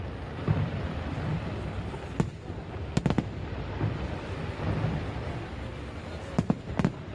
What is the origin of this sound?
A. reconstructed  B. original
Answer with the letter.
B